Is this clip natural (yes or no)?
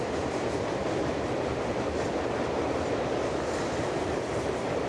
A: yes